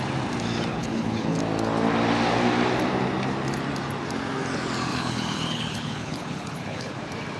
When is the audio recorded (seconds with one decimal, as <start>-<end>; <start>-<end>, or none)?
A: 0.0-0.7; 1.4-4.9; 7.0-7.4